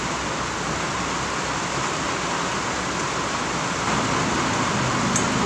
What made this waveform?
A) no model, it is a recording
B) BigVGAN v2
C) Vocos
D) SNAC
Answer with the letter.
A